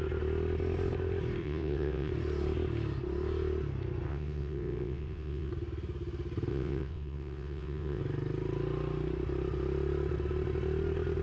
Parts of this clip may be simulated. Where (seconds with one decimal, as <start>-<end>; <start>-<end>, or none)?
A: 1.4-2.1; 4.1-5.5; 6.5-8.0